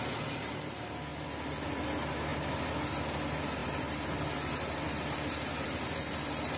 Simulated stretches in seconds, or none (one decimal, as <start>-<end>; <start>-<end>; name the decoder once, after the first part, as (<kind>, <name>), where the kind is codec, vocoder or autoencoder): 1.1-1.7 (vocoder, BigVGAN v2); 2.3-2.8; 3.6-6.6